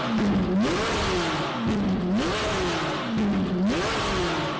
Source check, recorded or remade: recorded